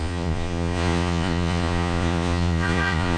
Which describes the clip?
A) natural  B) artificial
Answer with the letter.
B